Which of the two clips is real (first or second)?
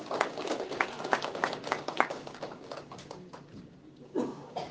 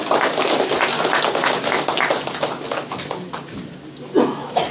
second